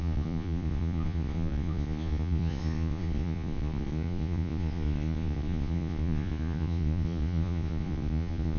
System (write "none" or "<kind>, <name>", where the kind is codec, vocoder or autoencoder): vocoder, Vocos